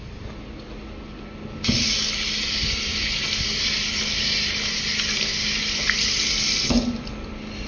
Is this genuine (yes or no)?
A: yes